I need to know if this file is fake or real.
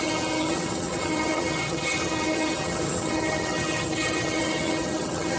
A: fake